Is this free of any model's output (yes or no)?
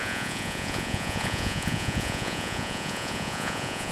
no